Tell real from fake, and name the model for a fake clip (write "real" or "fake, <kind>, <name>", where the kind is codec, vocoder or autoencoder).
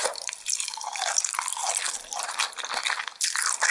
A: real